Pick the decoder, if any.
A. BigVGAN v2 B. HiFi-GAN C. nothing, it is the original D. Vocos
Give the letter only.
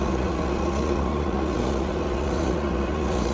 D